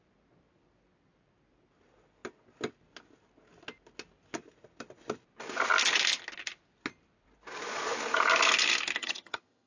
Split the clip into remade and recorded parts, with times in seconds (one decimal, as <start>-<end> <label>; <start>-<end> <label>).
0.0-9.0 recorded; 9.0-9.7 remade